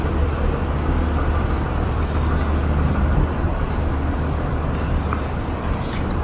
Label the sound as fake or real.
real